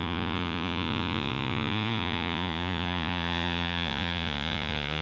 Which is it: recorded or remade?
remade